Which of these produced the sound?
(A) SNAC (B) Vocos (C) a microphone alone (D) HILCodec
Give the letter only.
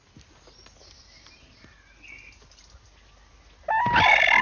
C